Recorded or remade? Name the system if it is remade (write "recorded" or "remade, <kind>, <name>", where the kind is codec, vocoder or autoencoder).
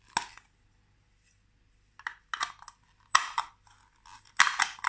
recorded